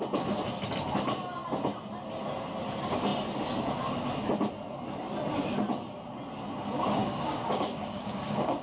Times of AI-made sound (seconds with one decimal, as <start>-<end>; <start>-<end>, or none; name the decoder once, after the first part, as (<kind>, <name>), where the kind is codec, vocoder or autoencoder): 7.0-8.6 (codec, DAC)